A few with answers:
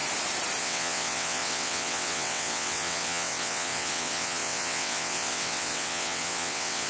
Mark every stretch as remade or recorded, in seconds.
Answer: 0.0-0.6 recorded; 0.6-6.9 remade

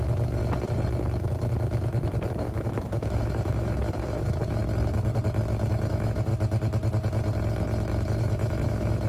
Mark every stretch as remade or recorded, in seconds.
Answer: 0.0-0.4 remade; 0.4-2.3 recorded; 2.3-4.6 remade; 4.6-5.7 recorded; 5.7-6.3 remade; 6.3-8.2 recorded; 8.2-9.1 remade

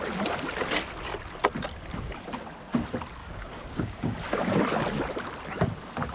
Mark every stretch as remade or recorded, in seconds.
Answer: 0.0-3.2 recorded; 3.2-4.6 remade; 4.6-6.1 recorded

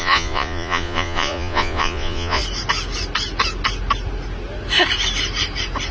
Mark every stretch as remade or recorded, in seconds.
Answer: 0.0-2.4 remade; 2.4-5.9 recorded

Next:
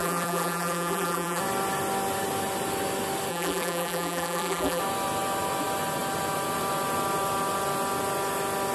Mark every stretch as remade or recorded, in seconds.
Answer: 0.0-1.4 remade; 1.4-3.3 recorded; 3.3-4.8 remade; 4.8-8.7 recorded

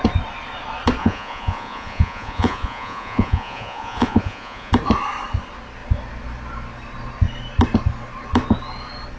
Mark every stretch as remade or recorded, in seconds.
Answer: 0.0-1.0 recorded; 1.0-4.7 remade; 4.7-9.2 recorded

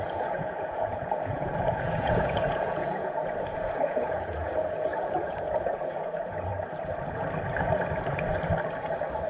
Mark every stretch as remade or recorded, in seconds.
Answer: 0.0-6.5 remade; 6.5-9.3 recorded

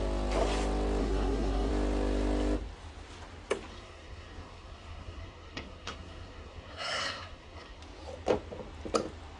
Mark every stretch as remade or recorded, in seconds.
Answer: 0.0-1.0 recorded; 1.0-1.7 remade; 1.7-3.7 recorded; 3.7-7.8 remade; 7.8-9.4 recorded